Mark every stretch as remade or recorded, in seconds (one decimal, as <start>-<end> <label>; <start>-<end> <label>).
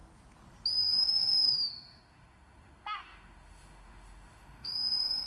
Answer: 0.0-0.8 recorded; 0.8-5.3 remade